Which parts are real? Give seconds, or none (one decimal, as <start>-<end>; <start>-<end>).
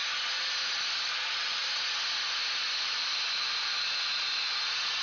0.0-0.7; 1.6-2.8